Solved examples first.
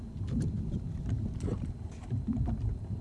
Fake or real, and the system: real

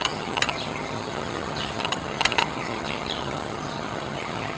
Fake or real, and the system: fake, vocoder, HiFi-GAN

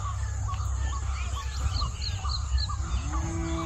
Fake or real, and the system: real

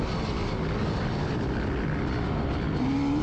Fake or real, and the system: real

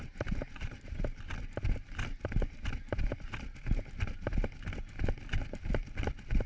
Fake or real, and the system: real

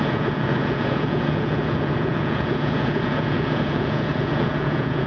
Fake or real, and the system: fake, vocoder, Vocos